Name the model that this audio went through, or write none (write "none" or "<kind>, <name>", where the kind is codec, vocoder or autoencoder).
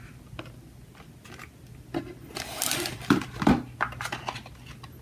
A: none